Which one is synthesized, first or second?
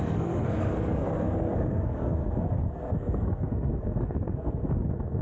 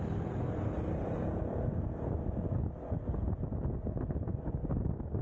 first